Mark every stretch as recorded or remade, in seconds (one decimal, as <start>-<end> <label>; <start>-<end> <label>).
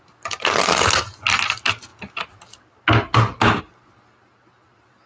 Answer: 0.0-5.1 recorded